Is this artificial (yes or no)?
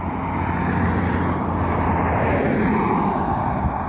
no